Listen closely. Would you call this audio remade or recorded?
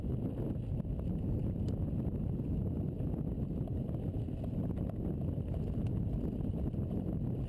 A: recorded